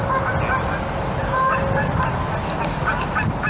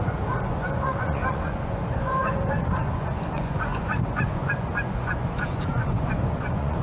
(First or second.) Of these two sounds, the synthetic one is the second